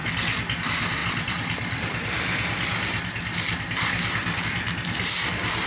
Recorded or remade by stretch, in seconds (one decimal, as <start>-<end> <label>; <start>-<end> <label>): 0.0-1.0 recorded; 1.0-4.4 remade; 4.4-5.7 recorded